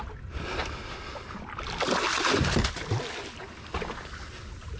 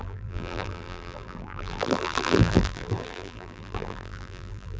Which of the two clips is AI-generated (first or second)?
second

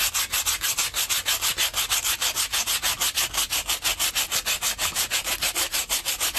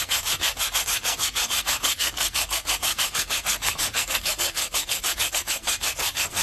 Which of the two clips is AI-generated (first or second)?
second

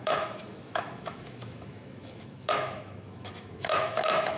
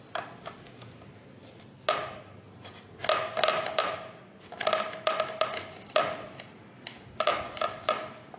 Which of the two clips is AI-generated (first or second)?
first